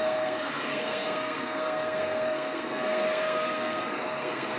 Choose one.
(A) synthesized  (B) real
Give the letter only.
A